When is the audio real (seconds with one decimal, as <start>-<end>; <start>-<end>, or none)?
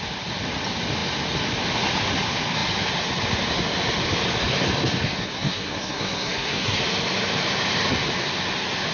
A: 0.0-5.2; 6.8-8.9